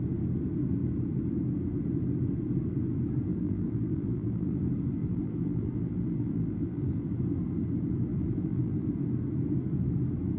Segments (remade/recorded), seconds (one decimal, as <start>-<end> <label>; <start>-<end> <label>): 0.0-3.3 recorded; 3.3-4.6 remade; 4.6-5.0 recorded; 5.0-7.0 remade; 7.0-8.1 recorded; 8.1-8.9 remade; 8.9-10.4 recorded